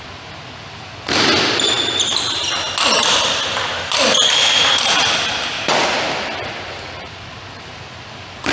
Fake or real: real